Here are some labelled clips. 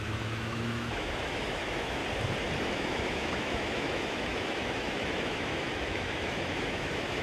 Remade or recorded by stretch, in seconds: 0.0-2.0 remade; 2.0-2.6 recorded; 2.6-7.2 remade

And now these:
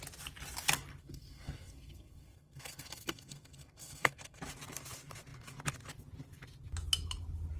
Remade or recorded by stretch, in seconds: 0.0-1.0 recorded; 1.0-4.4 remade; 4.4-7.6 recorded

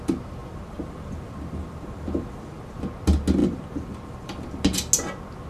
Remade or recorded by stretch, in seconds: 0.0-0.4 recorded; 0.4-2.8 remade; 2.8-3.4 recorded; 3.4-4.4 remade; 4.4-5.5 recorded